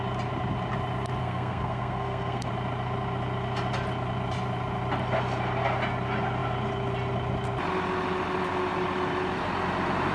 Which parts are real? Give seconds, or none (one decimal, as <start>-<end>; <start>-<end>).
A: 0.0-1.2; 2.5-10.1